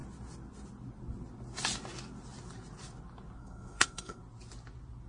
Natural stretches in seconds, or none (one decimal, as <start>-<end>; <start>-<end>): 0.0-3.4; 4.2-5.1